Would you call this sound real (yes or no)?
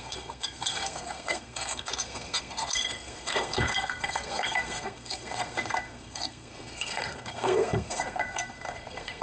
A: no